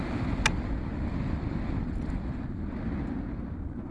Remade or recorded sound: recorded